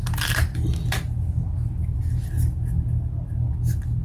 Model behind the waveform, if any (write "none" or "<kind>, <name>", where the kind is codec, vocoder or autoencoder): none